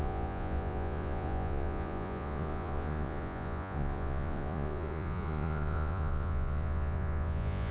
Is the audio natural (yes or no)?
no